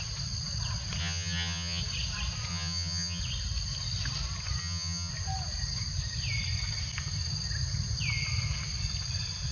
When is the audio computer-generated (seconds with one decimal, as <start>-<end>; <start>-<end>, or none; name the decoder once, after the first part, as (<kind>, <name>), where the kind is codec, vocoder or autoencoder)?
1.0-1.8 (vocoder, HiFi-GAN); 2.5-3.2; 4.6-5.1